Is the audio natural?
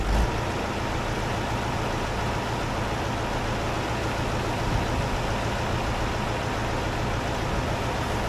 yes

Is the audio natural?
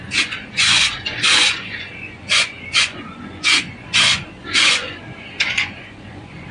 no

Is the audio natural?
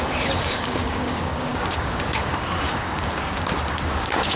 no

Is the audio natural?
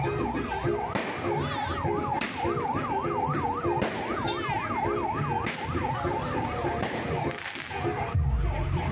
yes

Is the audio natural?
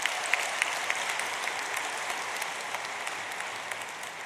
yes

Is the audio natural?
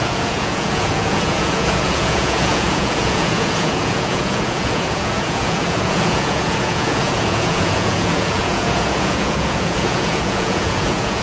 no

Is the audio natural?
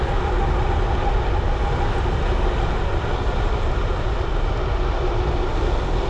yes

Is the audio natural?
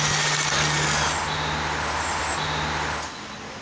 yes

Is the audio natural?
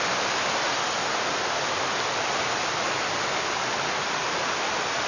yes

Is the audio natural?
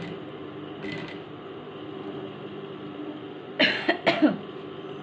yes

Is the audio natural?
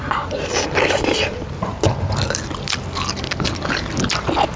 yes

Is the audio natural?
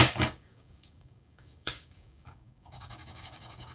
no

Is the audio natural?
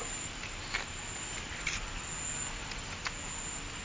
yes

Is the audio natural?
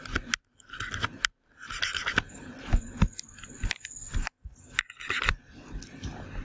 yes